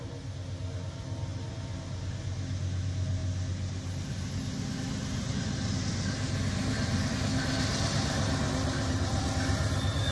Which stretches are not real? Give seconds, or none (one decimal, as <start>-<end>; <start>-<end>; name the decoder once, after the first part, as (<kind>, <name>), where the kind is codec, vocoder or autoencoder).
none